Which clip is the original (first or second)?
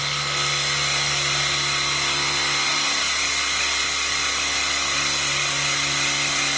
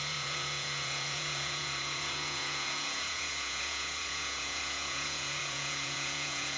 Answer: first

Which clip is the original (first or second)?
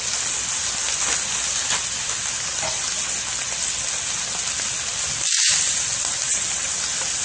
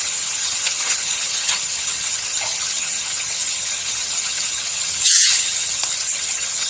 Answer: first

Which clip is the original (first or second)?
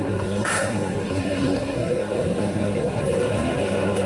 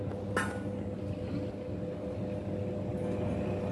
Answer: second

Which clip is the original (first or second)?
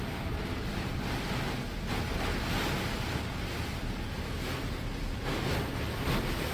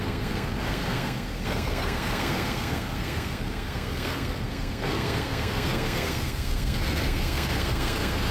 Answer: first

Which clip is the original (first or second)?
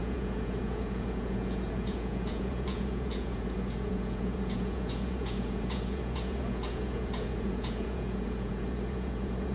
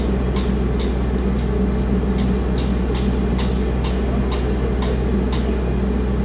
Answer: second